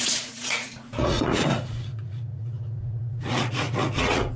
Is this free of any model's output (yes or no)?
no